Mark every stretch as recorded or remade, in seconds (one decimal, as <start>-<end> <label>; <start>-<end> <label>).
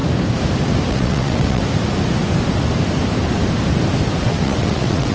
0.0-0.9 recorded; 0.9-1.6 remade; 1.6-4.2 recorded; 4.2-5.1 remade